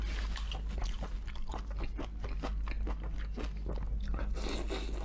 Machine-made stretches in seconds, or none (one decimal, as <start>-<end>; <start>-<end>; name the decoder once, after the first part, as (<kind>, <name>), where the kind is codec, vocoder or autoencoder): 0.8-1.5 (vocoder, BigVGAN v2)